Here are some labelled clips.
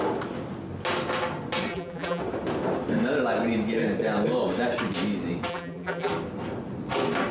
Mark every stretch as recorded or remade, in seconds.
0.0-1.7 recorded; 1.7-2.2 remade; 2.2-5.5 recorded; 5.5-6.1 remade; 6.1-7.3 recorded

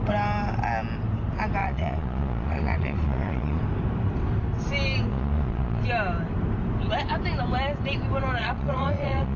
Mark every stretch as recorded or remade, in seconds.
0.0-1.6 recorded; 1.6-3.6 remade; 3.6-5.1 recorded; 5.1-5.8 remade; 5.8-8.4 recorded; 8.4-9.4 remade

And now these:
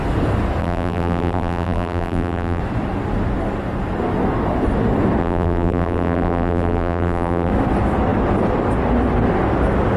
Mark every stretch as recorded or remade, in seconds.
0.0-0.6 recorded; 0.6-2.6 remade; 2.6-5.2 recorded; 5.2-7.5 remade; 7.5-10.0 recorded

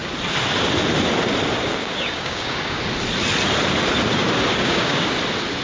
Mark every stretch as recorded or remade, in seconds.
0.0-1.8 recorded; 1.8-2.8 remade; 2.8-4.5 recorded; 4.5-5.1 remade; 5.1-5.6 recorded

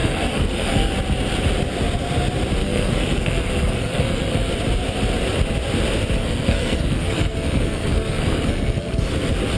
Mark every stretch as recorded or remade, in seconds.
0.0-0.9 remade; 0.9-2.6 recorded; 2.6-4.5 remade; 4.5-6.2 recorded; 6.2-9.0 remade; 9.0-9.6 recorded

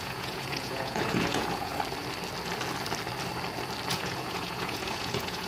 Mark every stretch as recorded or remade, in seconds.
0.0-1.7 remade; 1.7-3.9 recorded; 3.9-5.5 remade

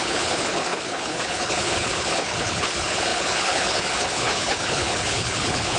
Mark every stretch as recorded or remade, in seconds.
0.0-5.8 remade

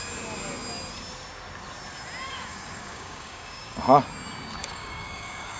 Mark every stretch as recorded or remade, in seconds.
0.0-2.5 recorded; 2.5-3.8 remade; 3.8-4.6 recorded; 4.6-5.6 remade